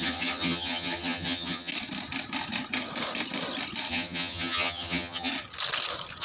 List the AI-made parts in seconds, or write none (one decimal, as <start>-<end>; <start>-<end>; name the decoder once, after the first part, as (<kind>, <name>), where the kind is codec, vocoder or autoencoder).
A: 0.0-1.7 (vocoder, HiFi-GAN); 3.9-5.3